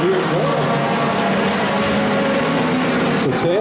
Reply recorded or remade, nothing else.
recorded